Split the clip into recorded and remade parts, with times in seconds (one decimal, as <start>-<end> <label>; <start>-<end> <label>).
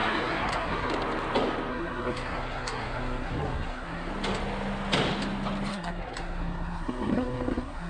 0.0-0.9 remade; 0.9-1.7 recorded; 1.7-4.1 remade; 4.1-5.7 recorded; 5.7-7.9 remade